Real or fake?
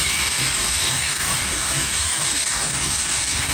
fake